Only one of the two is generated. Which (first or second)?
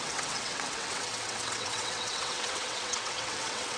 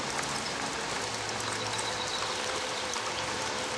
first